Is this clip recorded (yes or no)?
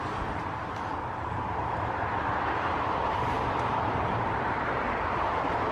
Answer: no